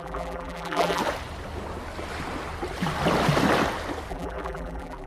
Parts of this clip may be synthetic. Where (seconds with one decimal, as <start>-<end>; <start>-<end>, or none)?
0.0-1.0; 4.1-5.1